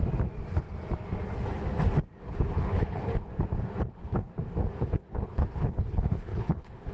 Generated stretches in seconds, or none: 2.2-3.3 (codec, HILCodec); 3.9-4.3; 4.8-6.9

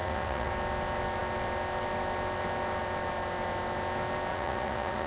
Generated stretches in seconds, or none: 0.0-0.5 (vocoder, Vocos); 4.3-5.1

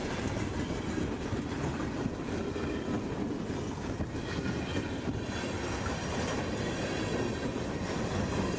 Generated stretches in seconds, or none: none